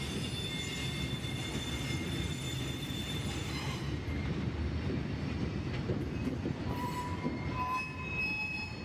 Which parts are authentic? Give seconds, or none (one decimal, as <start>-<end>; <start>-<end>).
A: 0.0-2.5; 7.0-8.8